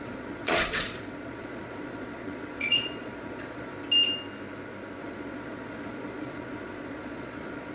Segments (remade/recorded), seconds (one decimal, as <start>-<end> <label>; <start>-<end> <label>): 0.0-3.7 remade; 3.7-5.0 recorded; 5.0-7.7 remade